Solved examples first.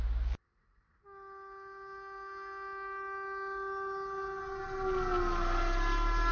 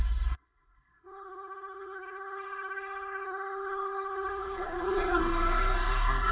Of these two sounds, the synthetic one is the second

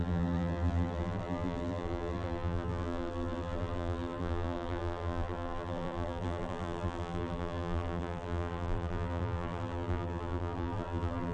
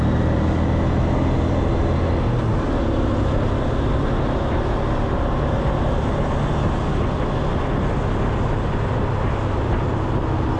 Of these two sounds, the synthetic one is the first